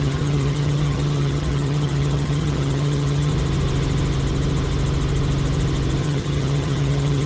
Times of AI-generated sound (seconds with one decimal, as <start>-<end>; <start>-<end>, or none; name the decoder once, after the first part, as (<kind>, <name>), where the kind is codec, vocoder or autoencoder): 0.0-3.3 (vocoder, HiFi-GAN); 6.0-7.3

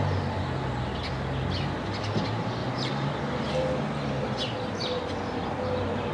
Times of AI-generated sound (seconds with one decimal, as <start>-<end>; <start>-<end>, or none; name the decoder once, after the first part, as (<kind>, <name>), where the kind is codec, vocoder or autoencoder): 2.6-3.5 (vocoder, BigVGAN v2)

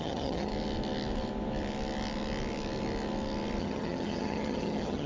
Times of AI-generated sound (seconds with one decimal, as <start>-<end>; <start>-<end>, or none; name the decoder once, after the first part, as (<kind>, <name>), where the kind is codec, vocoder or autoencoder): 0.0-0.5 (vocoder, HiFi-GAN); 3.6-5.1

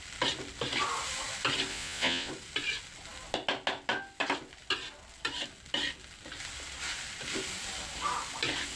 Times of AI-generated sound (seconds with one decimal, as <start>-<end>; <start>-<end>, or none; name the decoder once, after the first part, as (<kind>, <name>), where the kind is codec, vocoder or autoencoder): 1.7-2.3 (vocoder, Vocos)

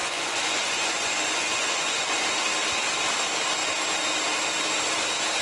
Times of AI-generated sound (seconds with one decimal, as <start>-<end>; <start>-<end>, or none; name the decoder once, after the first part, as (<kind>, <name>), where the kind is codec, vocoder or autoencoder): 0.0-2.2 (vocoder, Vocos)

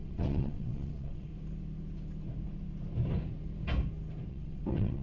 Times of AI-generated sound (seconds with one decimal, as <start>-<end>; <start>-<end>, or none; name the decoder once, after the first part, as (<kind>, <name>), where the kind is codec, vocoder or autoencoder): 0.0-1.3 (vocoder, WaveNeXt); 4.3-5.0